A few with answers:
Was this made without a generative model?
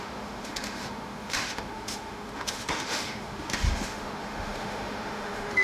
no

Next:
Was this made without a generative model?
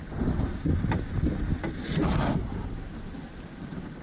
yes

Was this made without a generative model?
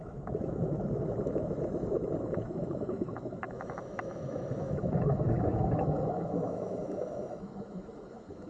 no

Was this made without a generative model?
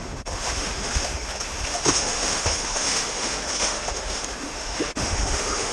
no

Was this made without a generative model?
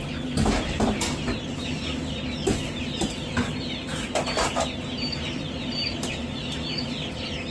yes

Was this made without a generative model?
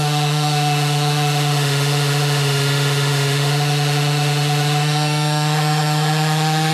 no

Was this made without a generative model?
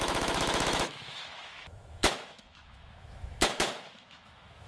no